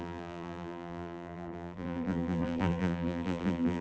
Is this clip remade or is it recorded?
remade